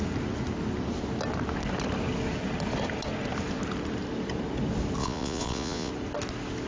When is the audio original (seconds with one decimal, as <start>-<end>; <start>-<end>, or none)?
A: 0.0-5.0; 5.9-6.7